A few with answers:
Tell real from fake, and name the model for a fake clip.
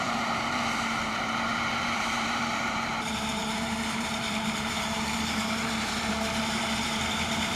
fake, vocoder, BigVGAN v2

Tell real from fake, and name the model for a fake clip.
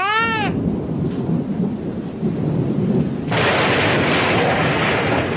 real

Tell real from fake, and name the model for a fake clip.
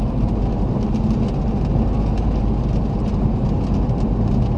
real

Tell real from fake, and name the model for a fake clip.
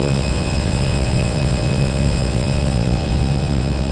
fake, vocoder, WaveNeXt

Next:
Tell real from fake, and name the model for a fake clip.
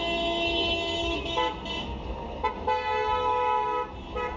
real